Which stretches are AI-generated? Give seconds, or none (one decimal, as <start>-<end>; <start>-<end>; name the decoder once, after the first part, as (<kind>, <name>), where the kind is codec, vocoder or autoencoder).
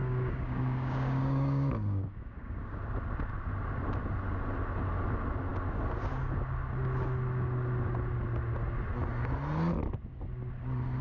0.0-2.8 (codec, DAC)